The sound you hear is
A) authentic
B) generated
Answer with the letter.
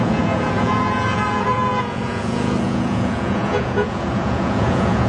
B